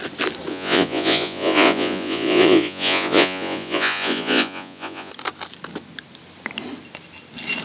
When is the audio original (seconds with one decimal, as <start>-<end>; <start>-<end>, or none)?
0.0-0.5; 5.1-7.6